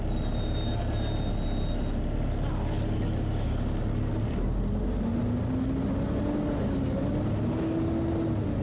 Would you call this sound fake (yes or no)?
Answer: no